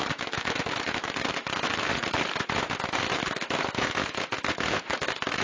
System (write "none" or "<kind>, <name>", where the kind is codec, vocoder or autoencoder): autoencoder, DAC-VAE